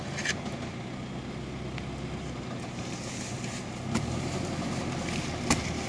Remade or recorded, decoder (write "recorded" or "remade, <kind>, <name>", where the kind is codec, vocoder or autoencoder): recorded